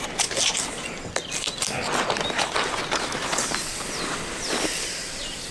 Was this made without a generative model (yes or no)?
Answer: yes